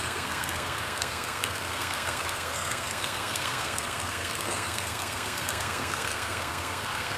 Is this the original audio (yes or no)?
no